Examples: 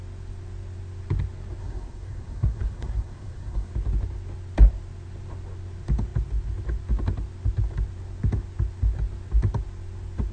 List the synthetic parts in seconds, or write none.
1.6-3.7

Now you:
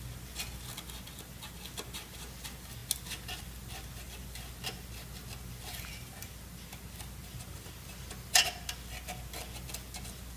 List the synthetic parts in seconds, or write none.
none

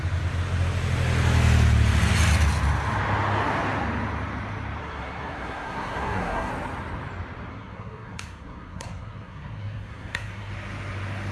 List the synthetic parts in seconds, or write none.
4.8-6.5; 7.5-10.5

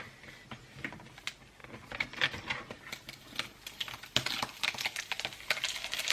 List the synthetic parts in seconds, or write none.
none

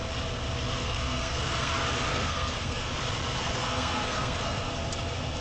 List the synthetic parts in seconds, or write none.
0.8-1.7; 2.1-2.9; 3.4-4.7